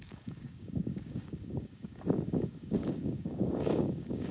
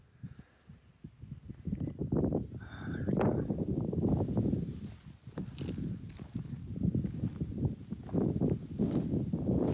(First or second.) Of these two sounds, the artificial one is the first